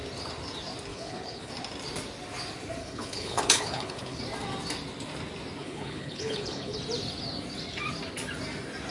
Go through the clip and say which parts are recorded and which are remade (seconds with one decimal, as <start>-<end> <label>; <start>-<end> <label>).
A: 0.0-0.9 recorded; 0.9-1.5 remade; 1.5-2.8 recorded; 2.8-4.2 remade; 4.2-5.6 recorded; 5.6-6.8 remade; 6.8-8.9 recorded